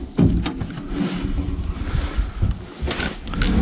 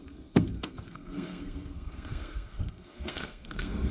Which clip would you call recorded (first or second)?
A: first